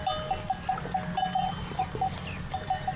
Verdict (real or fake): real